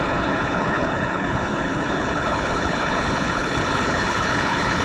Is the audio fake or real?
fake